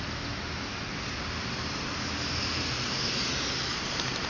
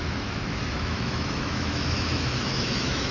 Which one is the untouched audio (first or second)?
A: first